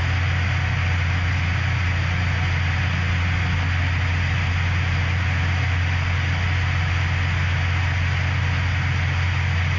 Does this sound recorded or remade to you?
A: recorded